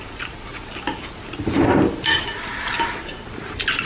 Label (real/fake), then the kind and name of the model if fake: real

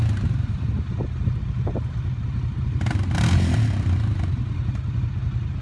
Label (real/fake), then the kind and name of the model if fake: real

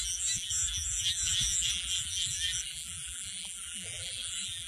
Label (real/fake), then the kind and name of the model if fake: fake, vocoder, BigVGAN v2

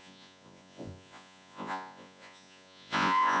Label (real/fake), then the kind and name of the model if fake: fake, vocoder, Vocos